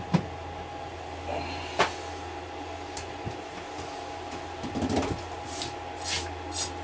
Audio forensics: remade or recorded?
recorded